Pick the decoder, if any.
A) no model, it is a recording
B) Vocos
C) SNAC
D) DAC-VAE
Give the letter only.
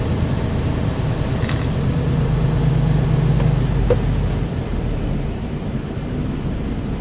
A